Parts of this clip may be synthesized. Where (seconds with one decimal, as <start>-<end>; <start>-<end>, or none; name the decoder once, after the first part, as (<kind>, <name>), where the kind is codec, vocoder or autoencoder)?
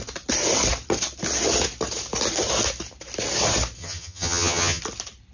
3.8-4.8 (vocoder, HiFi-GAN)